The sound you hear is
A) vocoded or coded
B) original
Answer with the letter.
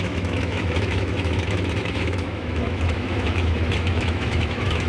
A